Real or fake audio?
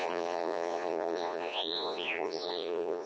fake